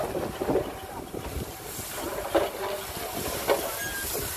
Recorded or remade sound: recorded